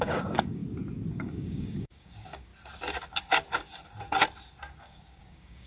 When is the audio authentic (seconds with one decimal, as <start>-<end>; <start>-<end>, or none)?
0.6-1.1; 2.5-4.8